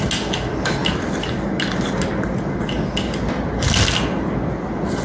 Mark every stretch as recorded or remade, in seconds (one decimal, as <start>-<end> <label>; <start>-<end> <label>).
0.0-5.0 recorded